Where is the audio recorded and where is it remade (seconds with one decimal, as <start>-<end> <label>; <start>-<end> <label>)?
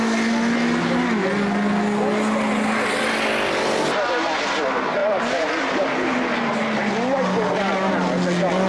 0.0-5.0 recorded; 5.0-6.9 remade; 6.9-8.7 recorded